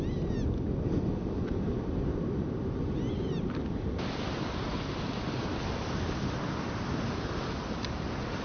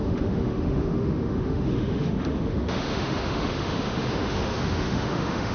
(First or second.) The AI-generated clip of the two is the second